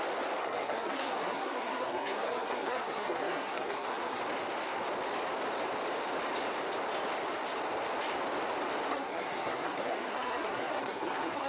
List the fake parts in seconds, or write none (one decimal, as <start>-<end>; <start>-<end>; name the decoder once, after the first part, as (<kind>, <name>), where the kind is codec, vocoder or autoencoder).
0.4-4.2 (codec, SNAC); 8.9-11.5